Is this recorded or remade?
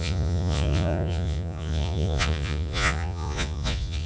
remade